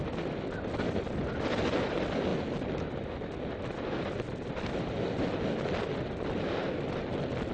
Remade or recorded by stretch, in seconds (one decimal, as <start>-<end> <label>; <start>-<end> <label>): 0.0-7.5 recorded